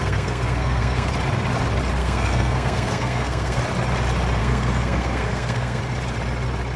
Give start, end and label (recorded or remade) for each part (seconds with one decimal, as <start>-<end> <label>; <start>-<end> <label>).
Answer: 0.0-1.1 remade; 1.1-2.0 recorded; 2.0-3.6 remade; 3.6-4.4 recorded; 4.4-5.8 remade; 5.8-6.8 recorded